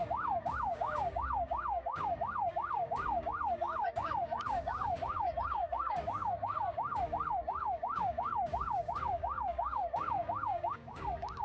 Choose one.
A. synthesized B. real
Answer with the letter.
A